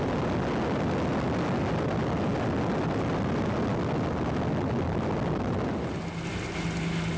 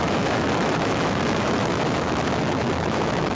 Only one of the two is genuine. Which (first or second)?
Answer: first